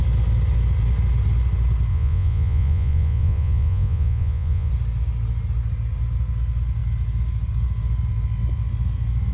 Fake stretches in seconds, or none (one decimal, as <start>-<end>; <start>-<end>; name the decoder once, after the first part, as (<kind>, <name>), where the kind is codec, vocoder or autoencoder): 1.9-4.7 (vocoder, Vocos)